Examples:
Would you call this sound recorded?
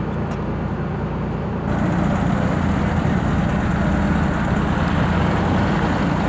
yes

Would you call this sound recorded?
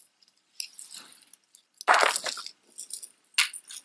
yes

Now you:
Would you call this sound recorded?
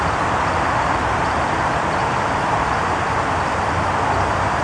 no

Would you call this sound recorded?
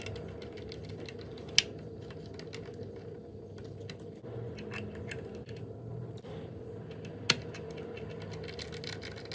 yes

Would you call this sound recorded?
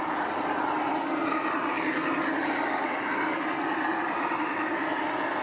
no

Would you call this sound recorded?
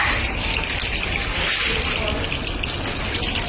yes